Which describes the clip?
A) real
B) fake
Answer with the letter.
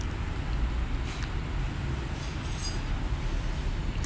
A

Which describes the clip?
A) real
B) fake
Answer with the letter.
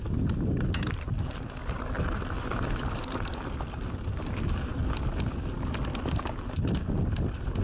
A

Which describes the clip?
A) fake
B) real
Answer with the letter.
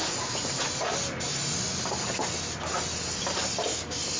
B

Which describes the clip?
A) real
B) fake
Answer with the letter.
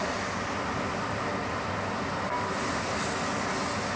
A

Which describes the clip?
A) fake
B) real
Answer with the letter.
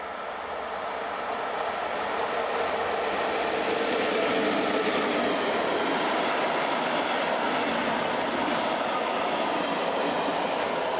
B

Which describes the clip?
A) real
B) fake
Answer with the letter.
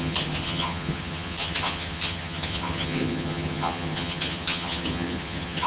B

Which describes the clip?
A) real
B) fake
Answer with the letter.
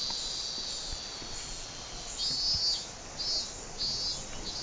A